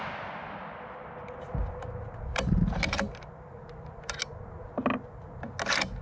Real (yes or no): yes